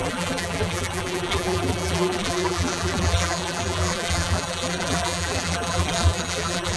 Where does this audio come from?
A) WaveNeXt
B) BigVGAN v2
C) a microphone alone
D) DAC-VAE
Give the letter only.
B